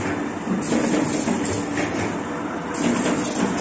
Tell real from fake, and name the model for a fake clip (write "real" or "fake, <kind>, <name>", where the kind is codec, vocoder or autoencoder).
real